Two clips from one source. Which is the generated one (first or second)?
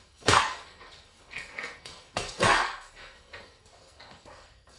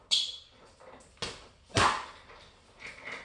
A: first